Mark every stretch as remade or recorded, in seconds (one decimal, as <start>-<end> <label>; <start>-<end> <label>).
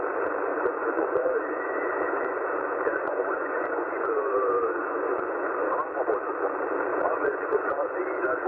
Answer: 0.0-0.5 recorded; 0.5-4.3 remade; 4.3-4.8 recorded; 4.8-5.5 remade; 5.5-6.9 recorded; 6.9-8.0 remade; 8.0-8.5 recorded